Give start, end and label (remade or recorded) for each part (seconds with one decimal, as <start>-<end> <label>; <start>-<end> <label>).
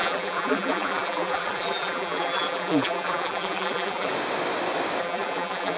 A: 0.0-4.1 remade; 4.1-5.0 recorded; 5.0-5.8 remade